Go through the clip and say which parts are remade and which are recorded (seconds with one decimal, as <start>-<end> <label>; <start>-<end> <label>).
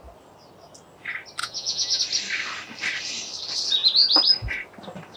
0.0-1.4 recorded; 1.4-2.0 remade; 2.0-5.2 recorded